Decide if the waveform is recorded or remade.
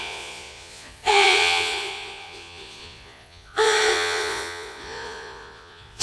remade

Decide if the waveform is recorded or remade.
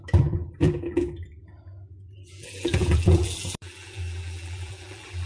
remade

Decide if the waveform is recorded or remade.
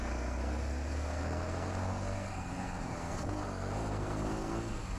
remade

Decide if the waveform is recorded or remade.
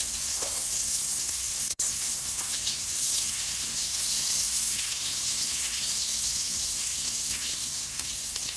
remade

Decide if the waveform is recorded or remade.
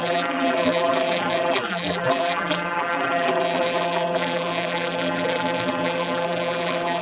remade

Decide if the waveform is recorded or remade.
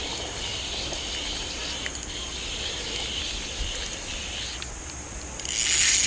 recorded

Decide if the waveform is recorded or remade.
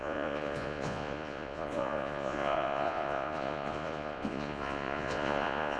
remade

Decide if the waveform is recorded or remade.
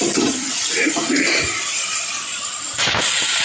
remade